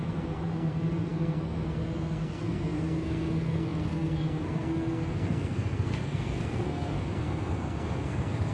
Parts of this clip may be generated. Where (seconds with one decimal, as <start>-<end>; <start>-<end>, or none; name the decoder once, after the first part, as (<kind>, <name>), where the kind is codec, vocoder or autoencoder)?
0.0-8.5 (codec, SNAC)